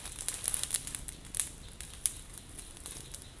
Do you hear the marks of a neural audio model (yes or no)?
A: no